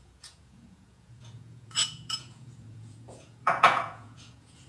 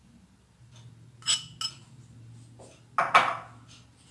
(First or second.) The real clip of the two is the second